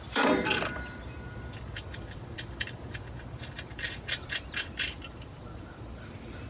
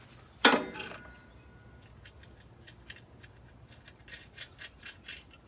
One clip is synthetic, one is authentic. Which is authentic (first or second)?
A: second